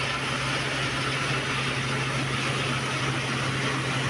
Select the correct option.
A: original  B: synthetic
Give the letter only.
A